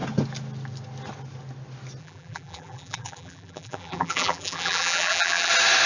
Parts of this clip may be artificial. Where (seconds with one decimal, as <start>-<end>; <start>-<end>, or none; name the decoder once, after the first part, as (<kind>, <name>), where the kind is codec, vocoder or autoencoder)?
2.0-5.5 (vocoder, BigVGAN v2)